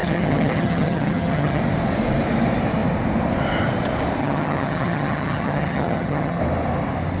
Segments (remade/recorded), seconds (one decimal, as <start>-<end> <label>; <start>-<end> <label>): 0.0-1.6 remade; 1.6-4.2 recorded; 4.2-6.4 remade; 6.4-7.2 recorded